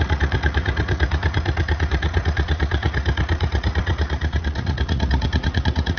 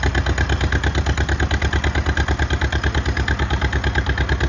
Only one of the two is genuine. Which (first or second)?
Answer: second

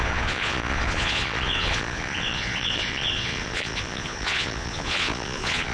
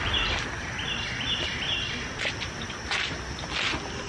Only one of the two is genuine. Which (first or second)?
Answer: second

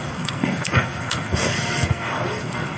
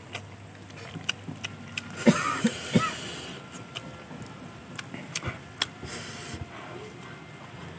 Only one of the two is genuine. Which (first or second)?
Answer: second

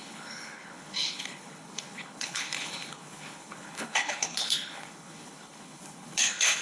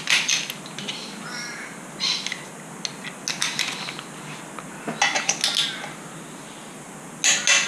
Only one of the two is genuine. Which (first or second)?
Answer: second